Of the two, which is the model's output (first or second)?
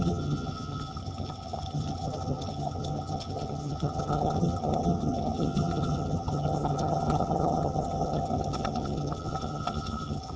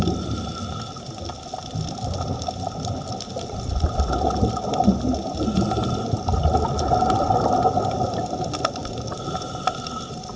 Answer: first